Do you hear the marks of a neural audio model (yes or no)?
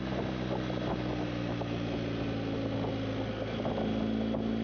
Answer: no